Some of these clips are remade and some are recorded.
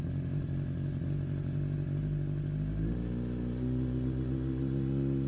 recorded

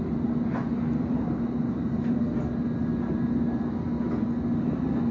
recorded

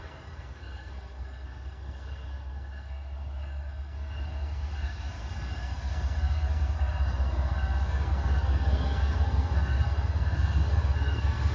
remade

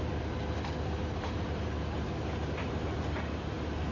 recorded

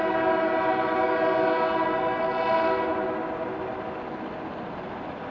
recorded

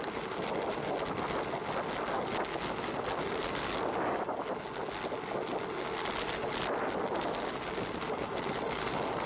recorded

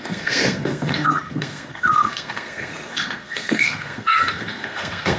remade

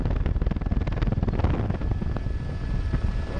recorded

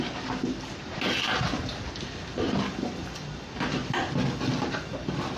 recorded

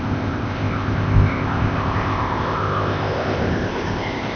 remade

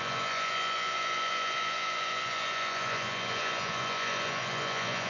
remade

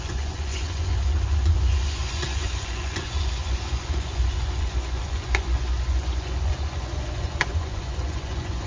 remade